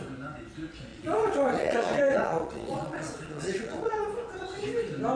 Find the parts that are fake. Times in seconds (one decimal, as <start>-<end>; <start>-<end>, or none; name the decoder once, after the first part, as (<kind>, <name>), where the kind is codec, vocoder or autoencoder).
0.9-4.0 (vocoder, Vocos)